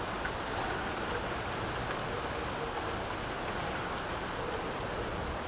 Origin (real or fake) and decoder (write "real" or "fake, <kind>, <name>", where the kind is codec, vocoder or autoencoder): real